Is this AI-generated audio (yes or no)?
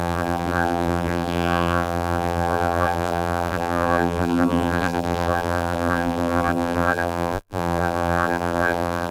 yes